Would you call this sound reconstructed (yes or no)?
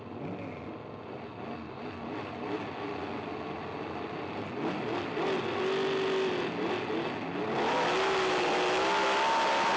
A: no